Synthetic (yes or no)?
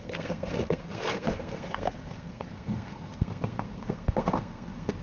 yes